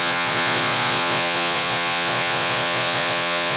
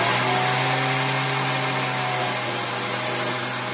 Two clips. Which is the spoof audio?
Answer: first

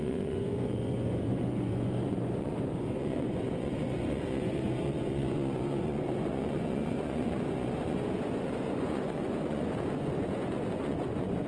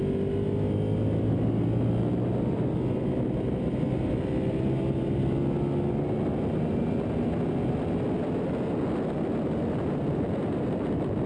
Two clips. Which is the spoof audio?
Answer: first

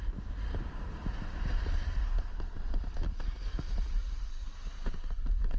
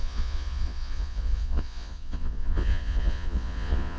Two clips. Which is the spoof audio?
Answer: second